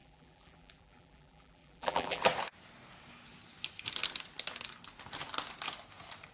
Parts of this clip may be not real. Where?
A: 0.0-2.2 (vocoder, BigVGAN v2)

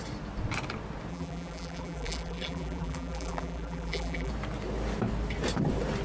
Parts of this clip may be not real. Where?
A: 1.1-4.3 (vocoder, BigVGAN v2)

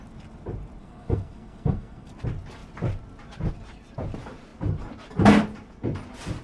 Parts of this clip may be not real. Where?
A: 0.8-2.1 (codec, SNAC)

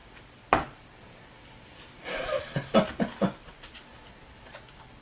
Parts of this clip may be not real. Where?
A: 0.0-2.4 (vocoder, BigVGAN v2)

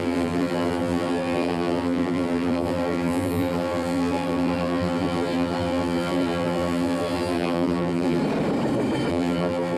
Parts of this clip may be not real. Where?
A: 0.0-8.2 (vocoder, BigVGAN v2); 9.1-9.8

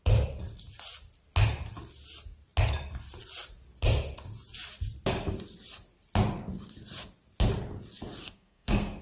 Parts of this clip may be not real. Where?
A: 8.2-9.0 (codec, SNAC)